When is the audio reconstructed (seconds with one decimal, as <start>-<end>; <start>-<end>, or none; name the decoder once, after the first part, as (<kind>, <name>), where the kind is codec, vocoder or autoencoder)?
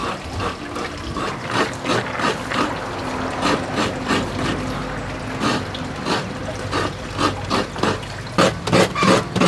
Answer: none